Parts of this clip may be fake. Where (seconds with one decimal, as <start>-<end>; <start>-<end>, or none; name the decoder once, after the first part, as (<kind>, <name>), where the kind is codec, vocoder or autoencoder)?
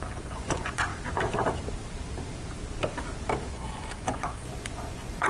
0.0-0.9 (vocoder, Vocos); 3.5-5.3